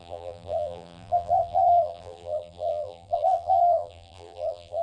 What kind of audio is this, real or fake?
fake